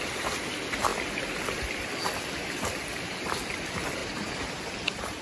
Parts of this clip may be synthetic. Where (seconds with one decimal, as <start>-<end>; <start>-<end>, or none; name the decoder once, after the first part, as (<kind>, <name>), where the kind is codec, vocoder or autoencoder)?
4.0-5.2 (vocoder, BigVGAN v2)

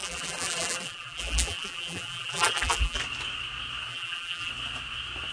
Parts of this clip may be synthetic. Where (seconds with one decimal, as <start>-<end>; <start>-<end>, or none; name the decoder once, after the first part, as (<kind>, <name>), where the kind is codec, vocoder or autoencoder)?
0.0-3.0 (vocoder, BigVGAN v2); 3.9-4.5

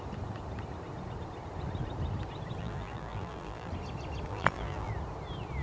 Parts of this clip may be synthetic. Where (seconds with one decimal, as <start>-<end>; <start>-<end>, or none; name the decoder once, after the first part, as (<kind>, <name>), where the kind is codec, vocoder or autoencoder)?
2.6-3.7 (vocoder, BigVGAN v2); 4.3-4.9